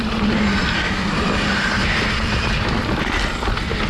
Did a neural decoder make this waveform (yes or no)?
no